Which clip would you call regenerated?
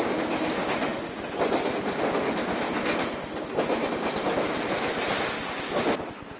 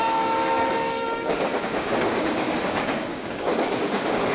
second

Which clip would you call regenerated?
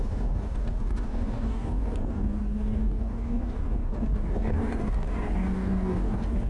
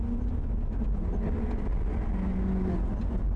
first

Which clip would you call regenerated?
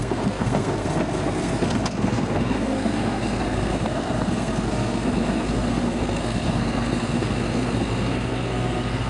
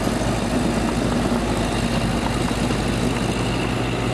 first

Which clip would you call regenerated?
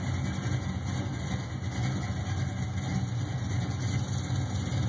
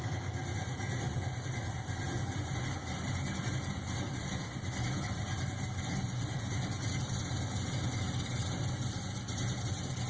second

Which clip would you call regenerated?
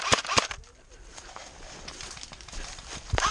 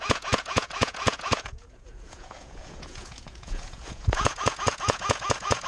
second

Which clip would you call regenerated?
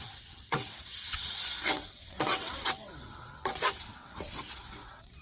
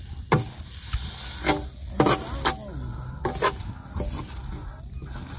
first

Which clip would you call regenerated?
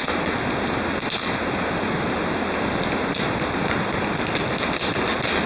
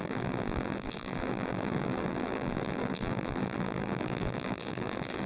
second